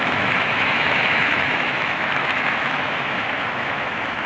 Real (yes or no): no